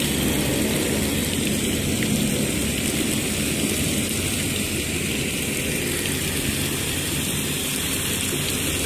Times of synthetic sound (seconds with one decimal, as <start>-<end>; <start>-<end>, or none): none